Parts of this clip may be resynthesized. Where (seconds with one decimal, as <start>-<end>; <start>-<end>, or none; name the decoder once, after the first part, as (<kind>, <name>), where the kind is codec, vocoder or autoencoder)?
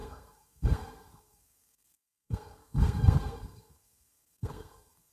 0.0-5.1 (codec, SNAC)